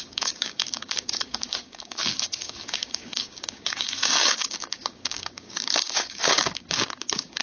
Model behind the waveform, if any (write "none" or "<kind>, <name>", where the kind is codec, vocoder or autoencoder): codec, DAC